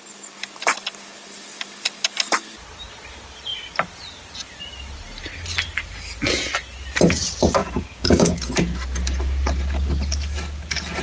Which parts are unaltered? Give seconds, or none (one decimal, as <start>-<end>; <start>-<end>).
0.0-7.6; 8.4-11.0